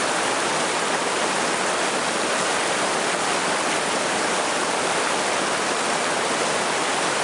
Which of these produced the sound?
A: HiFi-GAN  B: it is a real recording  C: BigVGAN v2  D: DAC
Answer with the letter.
B